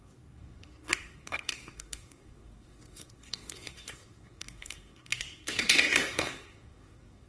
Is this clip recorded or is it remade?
remade